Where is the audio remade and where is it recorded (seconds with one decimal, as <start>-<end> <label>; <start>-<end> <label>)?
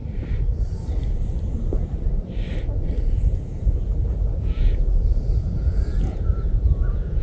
0.0-3.0 recorded; 3.0-7.2 remade